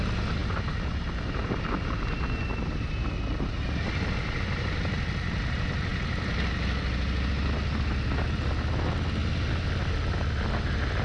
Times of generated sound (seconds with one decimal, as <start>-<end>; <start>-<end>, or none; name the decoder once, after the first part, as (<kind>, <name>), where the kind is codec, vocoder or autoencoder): none